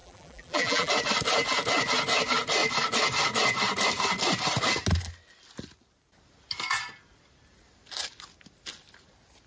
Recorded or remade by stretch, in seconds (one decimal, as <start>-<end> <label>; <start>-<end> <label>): 0.0-0.9 remade; 0.9-9.5 recorded